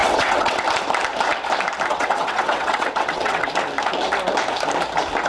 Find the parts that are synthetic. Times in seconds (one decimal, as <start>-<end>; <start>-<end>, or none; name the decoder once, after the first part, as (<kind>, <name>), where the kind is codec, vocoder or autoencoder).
0.0-0.6 (vocoder, WaveNeXt); 1.9-3.5